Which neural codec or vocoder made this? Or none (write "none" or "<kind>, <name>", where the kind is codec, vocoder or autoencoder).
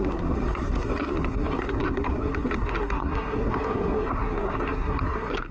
codec, SNAC